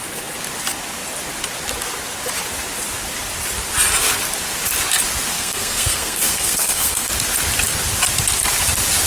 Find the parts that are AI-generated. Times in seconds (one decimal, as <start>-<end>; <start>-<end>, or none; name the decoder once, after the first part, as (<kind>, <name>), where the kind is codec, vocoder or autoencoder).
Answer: 5.3-7.1 (codec, SNAC)